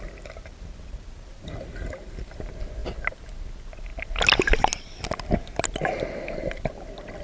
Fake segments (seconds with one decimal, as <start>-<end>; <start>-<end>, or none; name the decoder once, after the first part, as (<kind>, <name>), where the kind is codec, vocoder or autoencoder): none